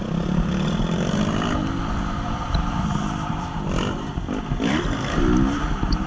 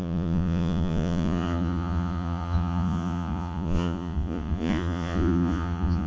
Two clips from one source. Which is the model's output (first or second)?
second